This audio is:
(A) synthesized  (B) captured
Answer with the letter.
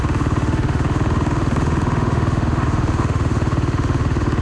A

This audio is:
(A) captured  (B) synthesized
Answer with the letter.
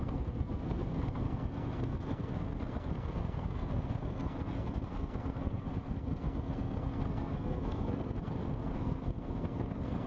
B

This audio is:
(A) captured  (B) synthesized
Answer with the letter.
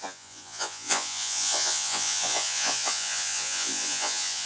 B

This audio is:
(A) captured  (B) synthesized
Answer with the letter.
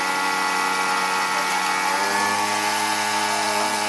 A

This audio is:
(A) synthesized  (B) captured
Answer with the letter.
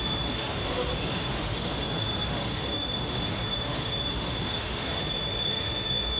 A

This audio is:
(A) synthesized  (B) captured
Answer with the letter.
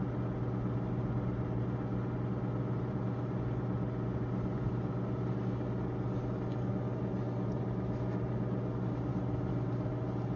B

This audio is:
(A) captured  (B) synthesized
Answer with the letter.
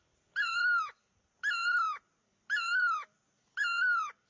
A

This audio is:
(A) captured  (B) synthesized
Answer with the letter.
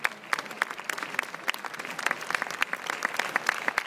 A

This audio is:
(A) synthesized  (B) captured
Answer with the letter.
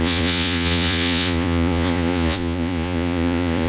A